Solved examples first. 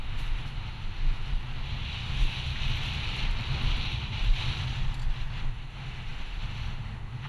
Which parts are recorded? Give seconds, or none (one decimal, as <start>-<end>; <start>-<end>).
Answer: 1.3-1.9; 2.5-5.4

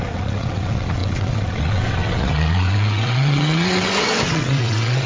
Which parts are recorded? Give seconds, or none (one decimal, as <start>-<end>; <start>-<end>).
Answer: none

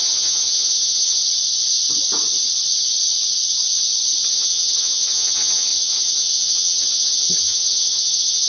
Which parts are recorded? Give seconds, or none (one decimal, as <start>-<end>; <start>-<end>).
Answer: 1.2-4.3

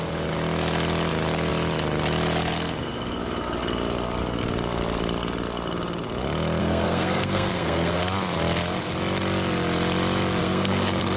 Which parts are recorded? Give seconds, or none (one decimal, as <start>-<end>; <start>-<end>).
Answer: 0.0-6.6; 8.0-10.4

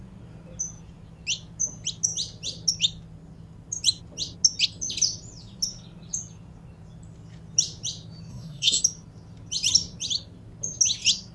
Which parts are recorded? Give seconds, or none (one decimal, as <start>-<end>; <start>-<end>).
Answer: 0.0-8.3; 8.8-11.3

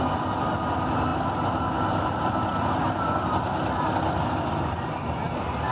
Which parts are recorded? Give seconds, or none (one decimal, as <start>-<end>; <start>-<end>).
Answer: 0.0-5.7